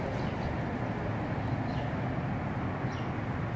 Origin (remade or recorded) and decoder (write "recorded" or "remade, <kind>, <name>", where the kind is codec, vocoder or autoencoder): recorded